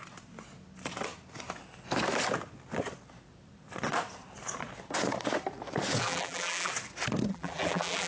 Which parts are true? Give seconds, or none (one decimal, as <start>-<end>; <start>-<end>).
0.0-6.0; 6.7-7.3